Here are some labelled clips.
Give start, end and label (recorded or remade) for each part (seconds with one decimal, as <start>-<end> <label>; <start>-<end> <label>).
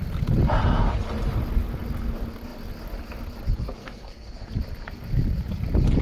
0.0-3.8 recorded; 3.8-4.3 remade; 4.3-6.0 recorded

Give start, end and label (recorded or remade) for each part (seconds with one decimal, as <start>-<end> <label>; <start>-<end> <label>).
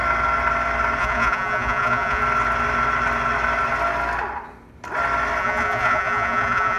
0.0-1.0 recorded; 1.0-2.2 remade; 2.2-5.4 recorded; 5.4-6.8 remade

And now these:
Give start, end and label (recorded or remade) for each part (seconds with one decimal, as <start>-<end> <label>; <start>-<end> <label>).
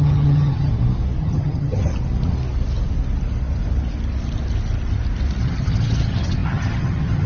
0.0-0.7 remade; 0.7-1.2 recorded; 1.2-1.9 remade; 1.9-5.4 recorded; 5.4-7.3 remade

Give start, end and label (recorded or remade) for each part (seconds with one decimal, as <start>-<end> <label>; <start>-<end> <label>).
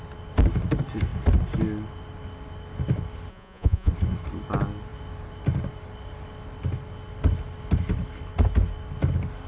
0.0-3.3 recorded; 3.3-3.9 remade; 3.9-9.5 recorded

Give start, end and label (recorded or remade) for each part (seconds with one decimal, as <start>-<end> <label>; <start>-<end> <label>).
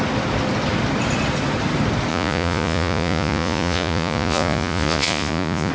0.0-2.1 recorded; 2.1-5.7 remade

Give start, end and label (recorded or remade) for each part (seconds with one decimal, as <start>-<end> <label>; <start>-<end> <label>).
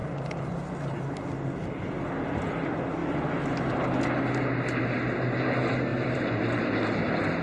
0.0-1.0 remade; 1.0-5.9 recorded; 5.9-6.7 remade; 6.7-7.4 recorded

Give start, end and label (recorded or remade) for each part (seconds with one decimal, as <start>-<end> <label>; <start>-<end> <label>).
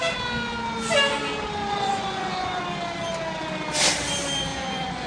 0.0-1.6 recorded; 1.6-2.6 remade; 2.6-4.5 recorded; 4.5-5.1 remade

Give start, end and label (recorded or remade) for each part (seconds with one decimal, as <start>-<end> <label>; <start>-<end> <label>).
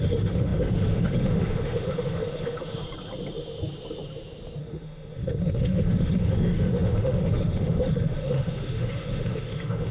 0.0-2.8 remade; 2.8-4.6 recorded; 4.6-9.9 remade